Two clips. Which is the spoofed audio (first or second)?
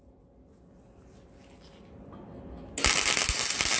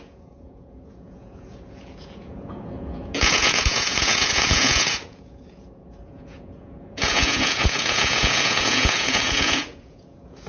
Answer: second